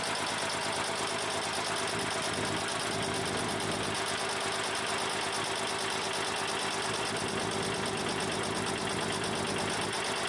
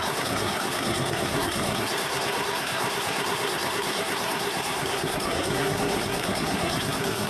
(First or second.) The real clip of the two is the first